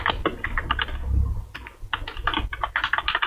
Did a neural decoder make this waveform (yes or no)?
no